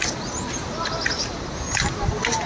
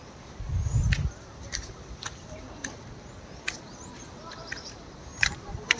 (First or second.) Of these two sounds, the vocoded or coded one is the second